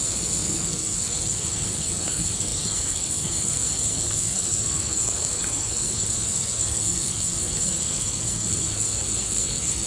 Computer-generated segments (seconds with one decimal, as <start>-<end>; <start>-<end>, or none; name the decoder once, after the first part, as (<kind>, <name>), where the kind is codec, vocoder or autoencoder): 0.0-9.9 (codec, SNAC)